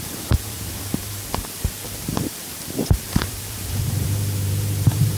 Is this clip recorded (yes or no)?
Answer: no